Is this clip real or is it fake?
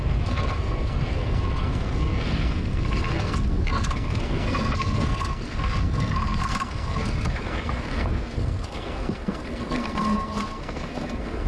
fake